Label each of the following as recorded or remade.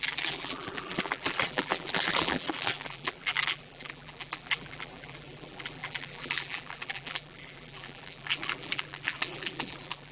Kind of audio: remade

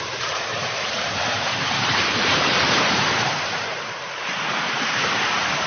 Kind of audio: remade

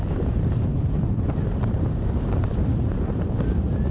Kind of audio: remade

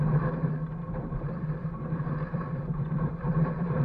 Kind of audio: remade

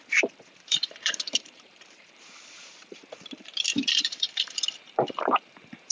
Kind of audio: remade